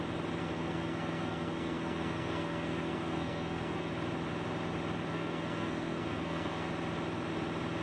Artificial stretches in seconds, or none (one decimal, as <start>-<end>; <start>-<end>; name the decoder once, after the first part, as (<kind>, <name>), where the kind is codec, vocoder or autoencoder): 0.4-3.9 (codec, SNAC); 5.1-6.7

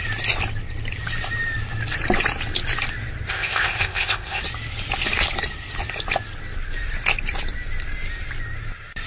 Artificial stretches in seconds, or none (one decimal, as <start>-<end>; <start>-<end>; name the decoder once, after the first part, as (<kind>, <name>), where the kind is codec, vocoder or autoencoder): 3.3-4.4 (codec, ZipCodec)

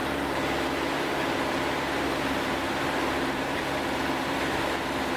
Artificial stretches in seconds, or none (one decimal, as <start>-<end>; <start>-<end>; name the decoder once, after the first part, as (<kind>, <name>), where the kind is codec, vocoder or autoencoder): none